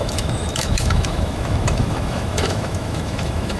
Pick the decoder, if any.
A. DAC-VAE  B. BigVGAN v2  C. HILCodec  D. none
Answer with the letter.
A